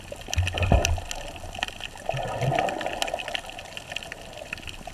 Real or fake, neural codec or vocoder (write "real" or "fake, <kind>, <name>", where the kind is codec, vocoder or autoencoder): real